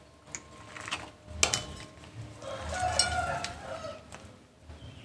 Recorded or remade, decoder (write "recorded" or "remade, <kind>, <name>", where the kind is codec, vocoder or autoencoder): recorded